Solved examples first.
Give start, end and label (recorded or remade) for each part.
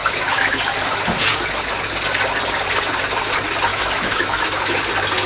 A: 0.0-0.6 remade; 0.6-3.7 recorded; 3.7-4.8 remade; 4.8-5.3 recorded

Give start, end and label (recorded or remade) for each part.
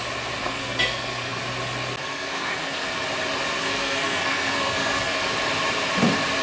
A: 0.0-0.4 recorded; 0.4-1.4 remade; 1.4-2.0 recorded; 2.0-2.9 remade; 2.9-3.6 recorded; 3.6-5.2 remade; 5.2-6.4 recorded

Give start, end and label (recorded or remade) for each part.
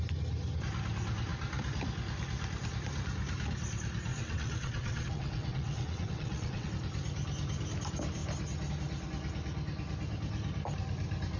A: 0.0-4.1 recorded; 4.1-6.7 remade; 6.7-11.4 recorded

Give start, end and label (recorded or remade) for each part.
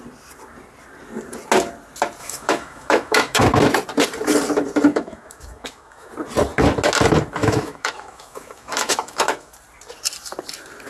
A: 0.0-2.2 recorded; 2.2-3.4 remade; 3.4-4.9 recorded; 4.9-6.1 remade; 6.1-7.4 recorded; 7.4-9.5 remade; 9.5-10.9 recorded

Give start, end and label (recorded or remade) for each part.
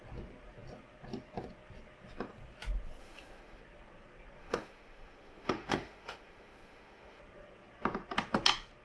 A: 0.0-3.0 recorded; 3.0-3.6 remade; 3.6-4.4 recorded; 4.4-7.2 remade; 7.2-8.8 recorded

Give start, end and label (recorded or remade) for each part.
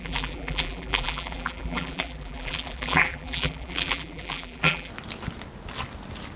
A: 0.0-4.9 remade; 4.9-6.4 recorded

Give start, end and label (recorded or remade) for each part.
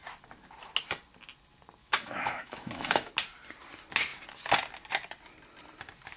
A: 0.0-1.8 recorded; 1.8-3.1 remade; 3.1-6.2 recorded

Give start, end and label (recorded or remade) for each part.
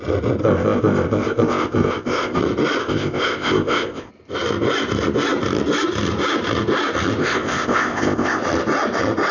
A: 0.0-0.4 recorded; 0.4-2.4 remade; 2.4-2.8 recorded; 2.8-4.1 remade; 4.1-7.2 recorded; 7.2-8.4 remade; 8.4-9.3 recorded